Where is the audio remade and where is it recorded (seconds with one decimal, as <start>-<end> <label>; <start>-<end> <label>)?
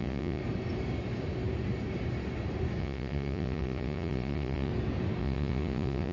0.0-0.4 remade; 0.4-2.8 recorded; 2.8-4.7 remade; 4.7-5.2 recorded; 5.2-6.1 remade